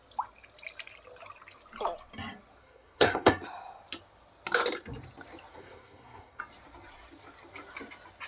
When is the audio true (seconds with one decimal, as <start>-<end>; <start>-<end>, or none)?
0.0-2.6; 3.3-5.5; 6.4-8.3